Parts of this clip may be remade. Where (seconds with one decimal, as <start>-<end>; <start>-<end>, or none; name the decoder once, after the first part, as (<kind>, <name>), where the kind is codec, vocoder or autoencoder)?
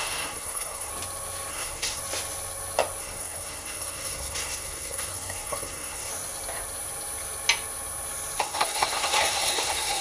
0.0-0.9 (codec, SNAC); 1.5-2.0; 3.0-6.1; 8.4-10.0